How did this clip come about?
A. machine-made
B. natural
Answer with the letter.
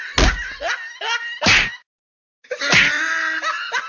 B